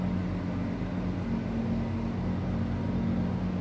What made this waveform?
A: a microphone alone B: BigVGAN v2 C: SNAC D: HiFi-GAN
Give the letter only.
A